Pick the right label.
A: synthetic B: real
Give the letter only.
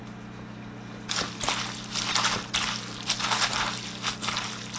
B